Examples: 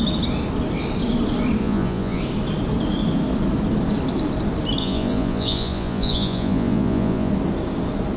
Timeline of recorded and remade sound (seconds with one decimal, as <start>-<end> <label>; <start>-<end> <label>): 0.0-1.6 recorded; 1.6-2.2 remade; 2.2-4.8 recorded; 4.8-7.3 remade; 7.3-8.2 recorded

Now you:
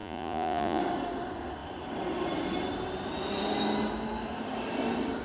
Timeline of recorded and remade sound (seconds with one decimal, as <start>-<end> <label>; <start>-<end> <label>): 0.0-0.8 remade; 0.8-5.2 recorded

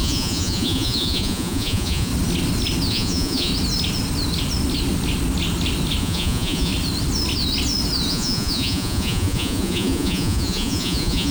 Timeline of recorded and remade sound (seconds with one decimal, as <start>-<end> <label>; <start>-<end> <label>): 0.0-2.1 remade; 2.1-2.9 recorded; 2.9-3.5 remade; 3.5-6.0 recorded; 6.0-6.7 remade; 6.7-8.1 recorded; 8.1-11.3 remade